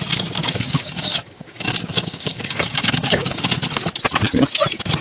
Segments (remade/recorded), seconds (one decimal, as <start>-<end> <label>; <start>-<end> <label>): 0.0-0.4 recorded; 0.4-3.4 remade; 3.4-5.0 recorded